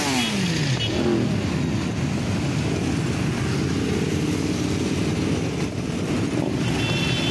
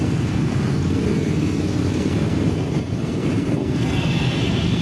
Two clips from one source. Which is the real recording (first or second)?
first